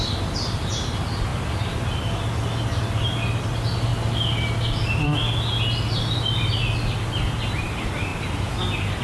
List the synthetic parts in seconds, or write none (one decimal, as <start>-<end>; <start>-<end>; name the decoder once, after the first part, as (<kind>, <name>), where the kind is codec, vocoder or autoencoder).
none